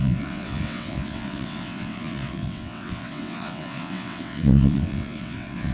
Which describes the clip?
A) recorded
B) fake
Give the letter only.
B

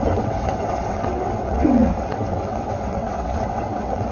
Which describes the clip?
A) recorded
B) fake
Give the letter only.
B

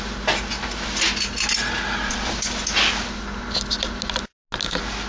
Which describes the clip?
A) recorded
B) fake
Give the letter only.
A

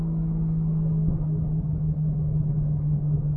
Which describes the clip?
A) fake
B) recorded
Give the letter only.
B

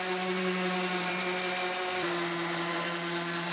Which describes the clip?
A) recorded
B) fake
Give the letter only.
B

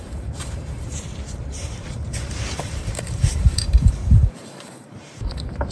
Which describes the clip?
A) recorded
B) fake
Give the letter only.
B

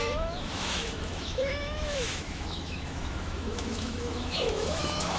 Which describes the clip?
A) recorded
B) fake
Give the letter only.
B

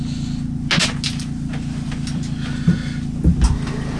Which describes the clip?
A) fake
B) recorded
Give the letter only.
B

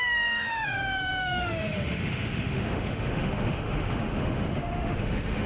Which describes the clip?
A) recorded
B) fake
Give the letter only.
B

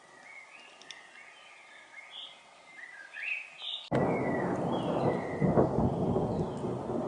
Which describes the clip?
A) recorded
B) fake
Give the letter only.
A